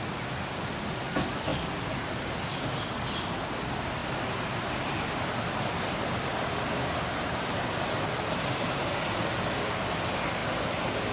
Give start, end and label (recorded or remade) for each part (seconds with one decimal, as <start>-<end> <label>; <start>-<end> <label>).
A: 0.0-11.1 recorded